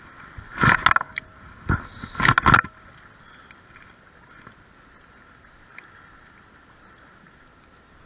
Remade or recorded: recorded